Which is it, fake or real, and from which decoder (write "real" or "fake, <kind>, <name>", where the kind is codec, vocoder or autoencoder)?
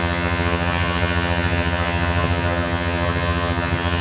fake, vocoder, HiFi-GAN